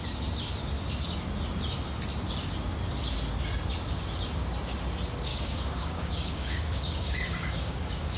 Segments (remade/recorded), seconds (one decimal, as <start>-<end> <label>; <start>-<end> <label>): 0.0-5.3 recorded; 5.3-8.2 remade